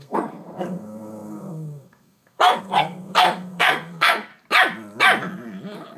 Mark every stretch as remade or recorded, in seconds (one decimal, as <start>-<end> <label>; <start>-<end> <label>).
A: 0.0-4.3 remade; 4.3-6.0 recorded